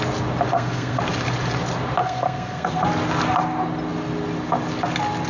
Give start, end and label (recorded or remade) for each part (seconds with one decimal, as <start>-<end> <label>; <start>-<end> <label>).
0.0-0.5 recorded; 0.5-1.0 remade; 1.0-2.0 recorded; 2.0-2.8 remade; 2.8-5.3 recorded